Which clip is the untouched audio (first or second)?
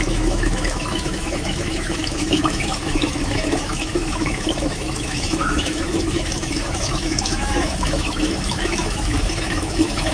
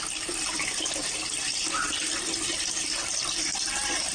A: second